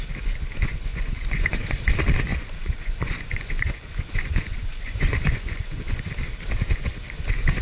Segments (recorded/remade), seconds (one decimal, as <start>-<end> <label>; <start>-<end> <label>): 0.0-0.9 recorded; 0.9-1.8 remade; 1.8-2.3 recorded; 2.3-6.1 remade; 6.1-7.6 recorded